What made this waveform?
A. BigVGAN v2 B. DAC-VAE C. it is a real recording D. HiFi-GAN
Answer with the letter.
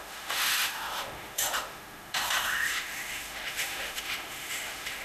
B